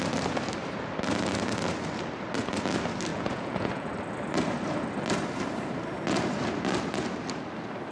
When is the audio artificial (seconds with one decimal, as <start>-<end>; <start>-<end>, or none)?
3.1-3.9